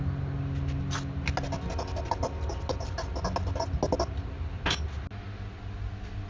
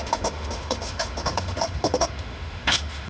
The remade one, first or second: second